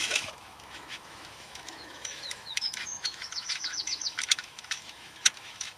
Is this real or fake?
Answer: fake